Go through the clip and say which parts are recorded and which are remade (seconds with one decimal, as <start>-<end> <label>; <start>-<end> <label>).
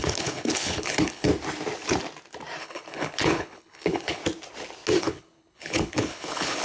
0.0-1.3 remade; 1.3-2.6 recorded; 2.6-4.2 remade; 4.2-5.0 recorded; 5.0-6.6 remade